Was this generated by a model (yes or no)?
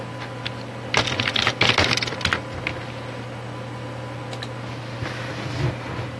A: no